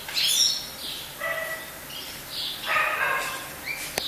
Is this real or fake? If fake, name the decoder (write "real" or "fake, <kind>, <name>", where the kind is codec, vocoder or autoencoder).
real